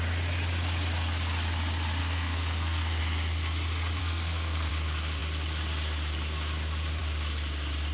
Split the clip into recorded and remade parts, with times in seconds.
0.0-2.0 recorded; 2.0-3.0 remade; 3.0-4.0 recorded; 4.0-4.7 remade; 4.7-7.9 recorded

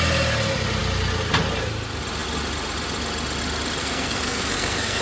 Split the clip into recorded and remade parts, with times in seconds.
0.0-3.8 recorded; 3.8-5.0 remade

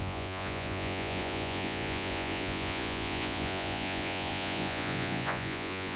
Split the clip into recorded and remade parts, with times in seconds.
0.0-6.0 remade

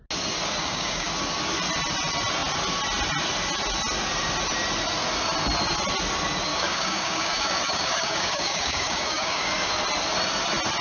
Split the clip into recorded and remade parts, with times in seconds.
0.0-0.6 recorded; 0.6-1.1 remade; 1.1-6.5 recorded; 6.5-9.7 remade; 9.7-10.8 recorded

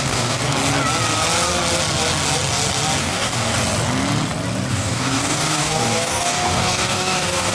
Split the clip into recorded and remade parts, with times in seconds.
0.0-0.4 remade; 0.4-3.0 recorded; 3.0-3.5 remade; 3.5-4.7 recorded; 4.7-7.5 remade

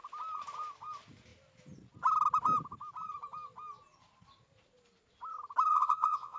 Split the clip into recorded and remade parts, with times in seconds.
0.0-5.7 recorded; 5.7-6.4 remade

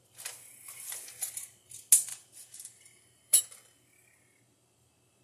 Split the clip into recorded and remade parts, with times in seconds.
0.0-2.1 recorded; 2.1-3.4 remade; 3.4-5.2 recorded